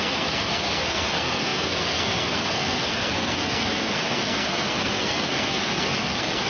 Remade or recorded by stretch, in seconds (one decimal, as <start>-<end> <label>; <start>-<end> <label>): 0.0-6.5 remade